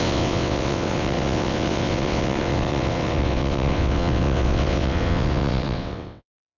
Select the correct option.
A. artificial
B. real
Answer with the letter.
A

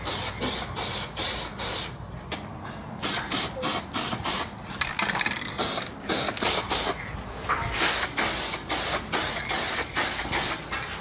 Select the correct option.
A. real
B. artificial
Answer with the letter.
A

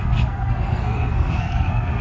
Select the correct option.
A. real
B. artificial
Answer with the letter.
B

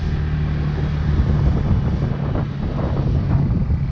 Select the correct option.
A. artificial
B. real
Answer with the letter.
B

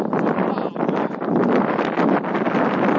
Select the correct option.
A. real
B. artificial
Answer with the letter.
A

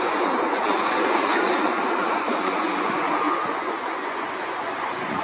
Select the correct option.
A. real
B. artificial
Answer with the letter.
B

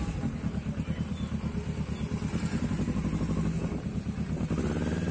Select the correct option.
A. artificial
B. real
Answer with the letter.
B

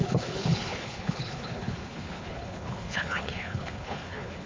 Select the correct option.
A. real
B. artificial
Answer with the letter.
B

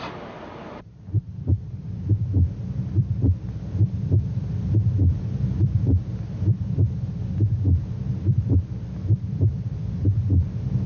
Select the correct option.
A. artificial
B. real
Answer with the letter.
B